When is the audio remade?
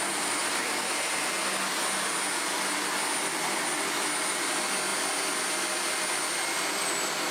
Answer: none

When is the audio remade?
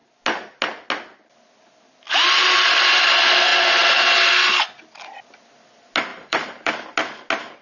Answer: 6.1-6.7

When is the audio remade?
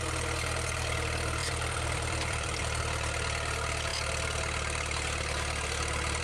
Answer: 1.4-2.8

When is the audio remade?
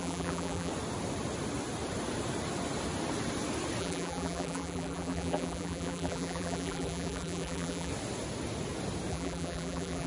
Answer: 0.0-0.7; 3.8-7.9; 9.1-10.1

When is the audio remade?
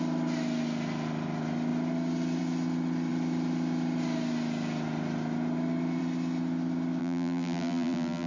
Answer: 7.0-8.3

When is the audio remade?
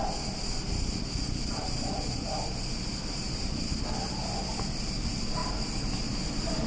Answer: 5.4-6.1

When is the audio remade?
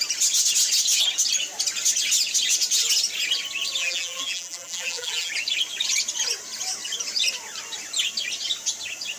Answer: 3.8-5.3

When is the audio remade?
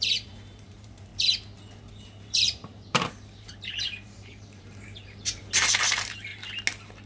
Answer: 0.0-1.1; 1.9-6.3